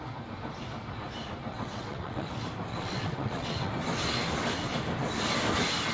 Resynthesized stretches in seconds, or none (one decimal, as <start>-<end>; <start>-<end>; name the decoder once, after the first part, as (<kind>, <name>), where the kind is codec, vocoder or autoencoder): 1.5-2.3 (vocoder, WaveNeXt); 2.7-3.7